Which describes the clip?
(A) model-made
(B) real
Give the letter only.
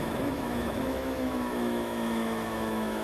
A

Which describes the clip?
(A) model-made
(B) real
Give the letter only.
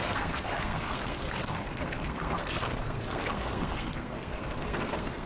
A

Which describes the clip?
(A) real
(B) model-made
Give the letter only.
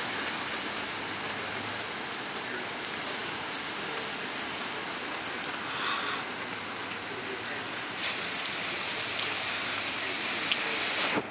A